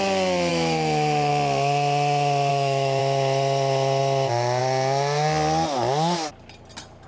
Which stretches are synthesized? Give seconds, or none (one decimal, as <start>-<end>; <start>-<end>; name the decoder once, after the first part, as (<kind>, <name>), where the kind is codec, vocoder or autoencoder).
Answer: 0.5-1.3 (autoencoder, DAC-VAE); 2.5-3.0